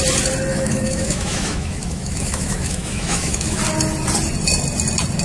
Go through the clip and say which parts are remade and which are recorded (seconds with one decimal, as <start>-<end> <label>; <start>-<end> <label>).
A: 0.0-0.5 recorded; 0.5-3.6 remade; 3.6-5.2 recorded